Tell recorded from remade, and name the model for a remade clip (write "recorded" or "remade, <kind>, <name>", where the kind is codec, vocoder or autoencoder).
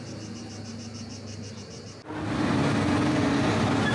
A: recorded